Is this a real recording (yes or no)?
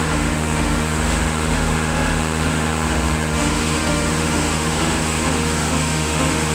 no